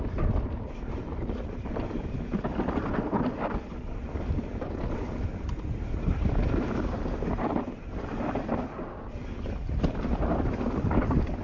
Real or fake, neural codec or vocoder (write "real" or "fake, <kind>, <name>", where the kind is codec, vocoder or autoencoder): fake, vocoder, BigVGAN v2